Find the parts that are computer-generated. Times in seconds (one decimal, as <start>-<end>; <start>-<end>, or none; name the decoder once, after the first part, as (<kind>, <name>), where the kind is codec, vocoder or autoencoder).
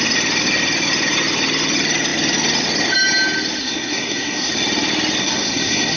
3.6-4.5 (codec, SNAC); 5.2-6.0